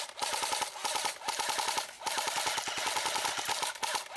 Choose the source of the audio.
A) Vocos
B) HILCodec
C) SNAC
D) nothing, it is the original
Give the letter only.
D